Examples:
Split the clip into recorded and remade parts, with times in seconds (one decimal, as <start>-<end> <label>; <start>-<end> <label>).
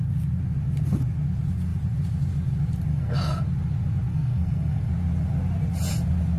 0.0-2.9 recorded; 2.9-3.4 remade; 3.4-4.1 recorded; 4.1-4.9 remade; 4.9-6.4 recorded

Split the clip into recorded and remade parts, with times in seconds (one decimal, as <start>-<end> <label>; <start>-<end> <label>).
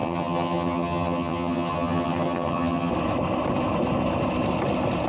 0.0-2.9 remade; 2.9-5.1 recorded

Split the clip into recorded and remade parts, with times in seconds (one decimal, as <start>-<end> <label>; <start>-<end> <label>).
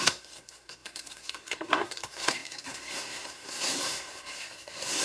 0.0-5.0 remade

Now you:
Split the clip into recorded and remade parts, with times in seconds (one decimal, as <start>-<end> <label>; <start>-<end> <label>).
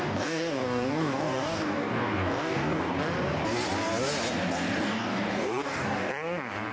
0.0-2.9 remade; 2.9-4.8 recorded; 4.8-6.1 remade; 6.1-6.7 recorded